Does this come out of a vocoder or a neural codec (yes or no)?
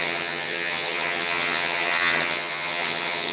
yes